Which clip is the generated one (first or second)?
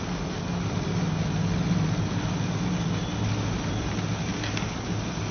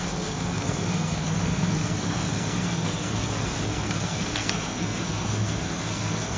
second